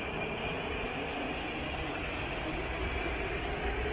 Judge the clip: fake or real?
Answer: real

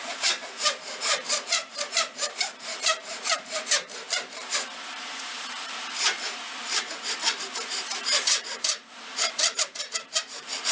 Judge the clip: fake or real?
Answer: fake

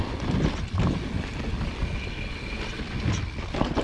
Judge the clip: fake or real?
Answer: real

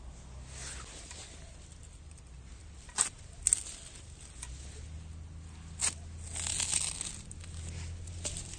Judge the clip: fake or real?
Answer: real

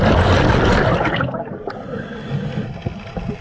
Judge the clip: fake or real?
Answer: real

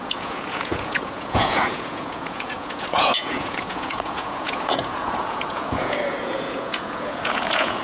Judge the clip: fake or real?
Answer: fake